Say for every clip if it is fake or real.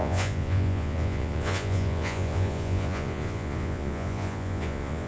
fake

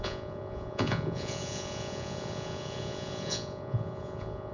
fake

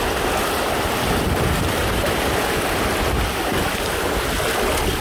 real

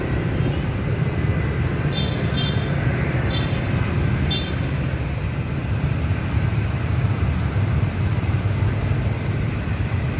real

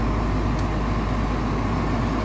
real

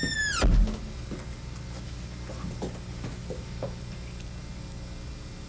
real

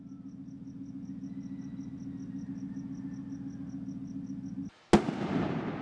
real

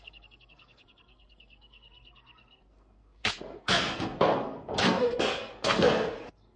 fake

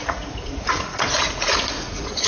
fake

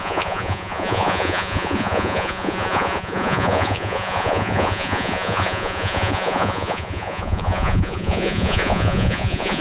fake